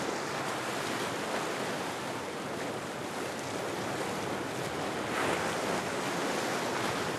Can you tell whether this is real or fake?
real